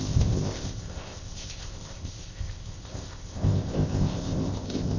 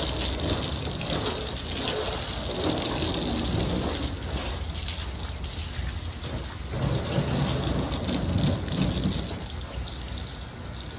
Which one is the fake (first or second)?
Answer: first